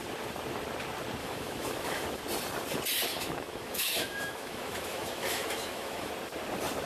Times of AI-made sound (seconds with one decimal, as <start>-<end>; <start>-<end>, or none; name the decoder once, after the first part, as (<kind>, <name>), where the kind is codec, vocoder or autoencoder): 1.2-2.2 (autoencoder, DAC-VAE); 3.1-6.1